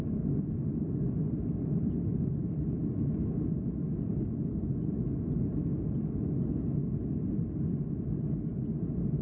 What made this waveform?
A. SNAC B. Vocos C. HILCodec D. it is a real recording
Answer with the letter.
D